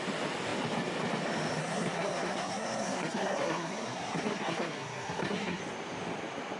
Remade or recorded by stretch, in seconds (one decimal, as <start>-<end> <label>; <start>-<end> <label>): 0.0-1.6 recorded; 1.6-5.6 remade; 5.6-6.6 recorded